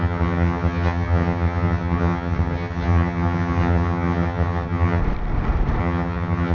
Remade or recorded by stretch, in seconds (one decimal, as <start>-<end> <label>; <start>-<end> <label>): 0.0-5.0 remade; 5.0-5.8 recorded; 5.8-6.5 remade